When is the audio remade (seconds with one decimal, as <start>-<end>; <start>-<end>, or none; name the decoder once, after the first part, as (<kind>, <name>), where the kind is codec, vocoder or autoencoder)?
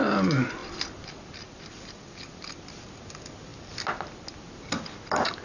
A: none